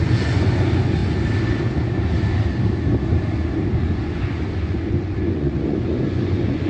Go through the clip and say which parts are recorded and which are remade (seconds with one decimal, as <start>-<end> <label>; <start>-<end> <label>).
0.0-1.0 remade; 1.0-3.8 recorded; 3.8-6.7 remade